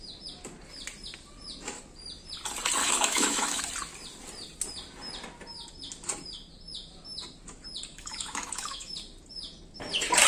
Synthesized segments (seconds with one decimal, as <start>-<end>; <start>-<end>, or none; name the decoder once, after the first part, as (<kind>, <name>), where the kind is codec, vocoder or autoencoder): 2.8-3.6 (autoencoder, DAC-VAE); 7.9-8.9